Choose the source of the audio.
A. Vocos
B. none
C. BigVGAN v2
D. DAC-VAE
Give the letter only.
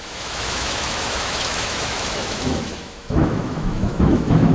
D